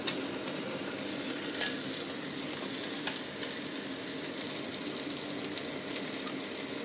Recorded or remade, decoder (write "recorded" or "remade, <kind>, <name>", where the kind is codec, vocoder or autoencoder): recorded